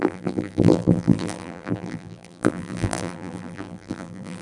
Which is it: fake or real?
fake